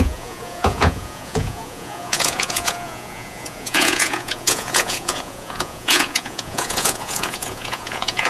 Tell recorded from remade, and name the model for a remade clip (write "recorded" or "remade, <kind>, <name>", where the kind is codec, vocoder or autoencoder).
remade, vocoder, Vocos